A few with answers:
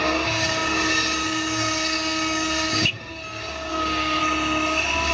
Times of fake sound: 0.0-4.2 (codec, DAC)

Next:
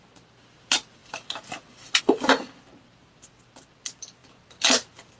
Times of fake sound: none

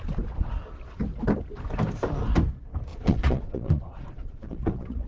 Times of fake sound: 2.9-5.1 (vocoder, Vocos)

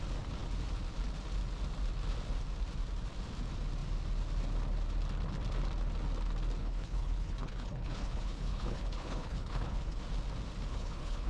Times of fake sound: 6.6-10.0 (codec, HILCodec); 10.7-11.3

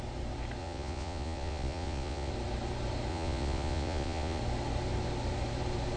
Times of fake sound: 0.6-2.3 (vocoder, Vocos); 3.1-4.4

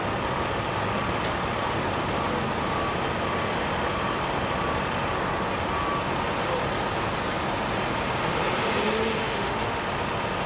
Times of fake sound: 9.2-9.8 (autoencoder, DAC-VAE)

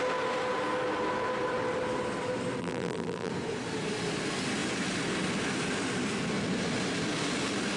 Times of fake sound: 2.6-3.3 (vocoder, BigVGAN v2)

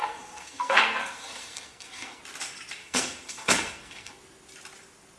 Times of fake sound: 0.0-2.2 (codec, SNAC); 2.8-4.2